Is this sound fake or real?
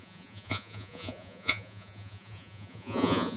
fake